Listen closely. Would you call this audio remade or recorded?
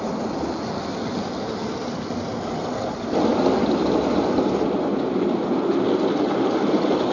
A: recorded